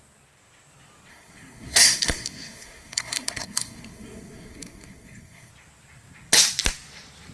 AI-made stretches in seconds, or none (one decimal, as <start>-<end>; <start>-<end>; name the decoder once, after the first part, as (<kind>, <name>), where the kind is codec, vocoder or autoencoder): 1.1-5.5 (codec, SNAC)